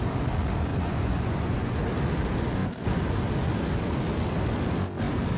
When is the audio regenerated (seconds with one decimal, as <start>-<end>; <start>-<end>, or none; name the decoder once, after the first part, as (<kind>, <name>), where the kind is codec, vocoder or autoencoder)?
0.7-1.8 (vocoder, Vocos)